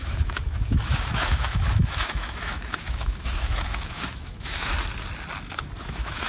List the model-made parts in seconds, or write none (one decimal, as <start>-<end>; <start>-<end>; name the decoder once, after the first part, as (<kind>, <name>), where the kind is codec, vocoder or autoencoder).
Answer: 0.0-4.7 (autoencoder, DAC-VAE); 5.8-6.3